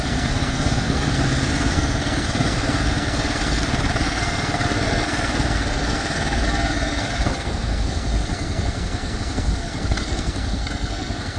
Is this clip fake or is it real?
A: fake